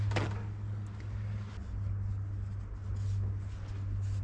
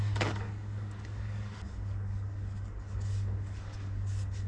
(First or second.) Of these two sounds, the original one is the first